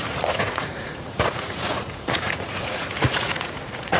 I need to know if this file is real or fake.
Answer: fake